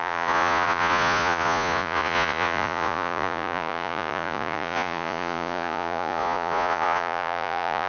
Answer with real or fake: fake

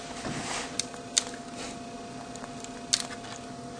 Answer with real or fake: real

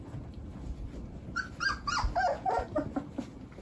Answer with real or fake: real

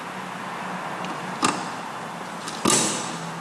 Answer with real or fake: real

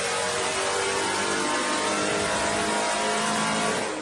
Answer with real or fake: real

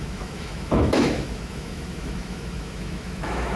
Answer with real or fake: fake